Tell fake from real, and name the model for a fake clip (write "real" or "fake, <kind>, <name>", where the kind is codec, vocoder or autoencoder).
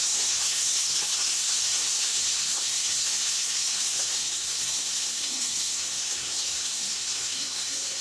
fake, codec, SNAC